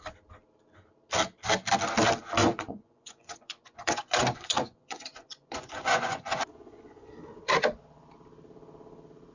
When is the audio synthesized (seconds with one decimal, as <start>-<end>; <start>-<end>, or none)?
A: 2.4-7.1

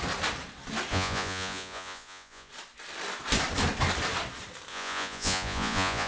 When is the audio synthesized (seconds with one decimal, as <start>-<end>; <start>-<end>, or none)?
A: 0.9-2.5; 4.7-6.1

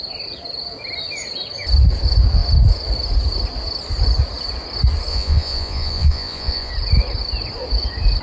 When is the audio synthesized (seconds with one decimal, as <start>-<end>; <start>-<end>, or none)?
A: 5.1-6.7

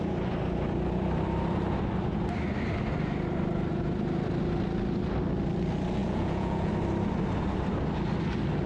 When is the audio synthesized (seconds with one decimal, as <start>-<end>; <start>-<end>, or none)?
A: 6.0-6.7

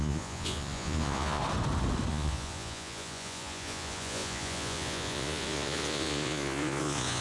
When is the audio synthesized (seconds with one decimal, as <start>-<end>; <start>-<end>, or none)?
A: 0.0-1.4; 2.1-7.2

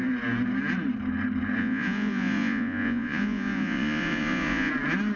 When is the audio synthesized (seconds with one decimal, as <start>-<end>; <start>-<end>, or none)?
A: 1.6-4.7

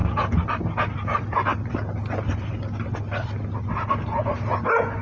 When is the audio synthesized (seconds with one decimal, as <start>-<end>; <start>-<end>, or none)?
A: none